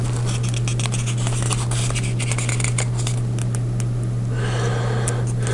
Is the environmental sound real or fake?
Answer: real